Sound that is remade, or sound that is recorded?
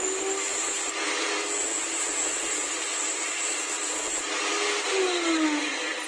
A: recorded